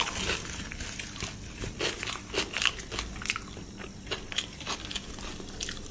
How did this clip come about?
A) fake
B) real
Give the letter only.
B